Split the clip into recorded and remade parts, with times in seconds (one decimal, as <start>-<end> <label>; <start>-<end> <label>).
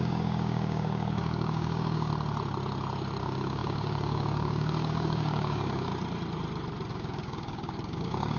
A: 0.0-2.1 remade; 2.1-3.2 recorded; 3.2-5.9 remade; 5.9-6.9 recorded; 6.9-8.4 remade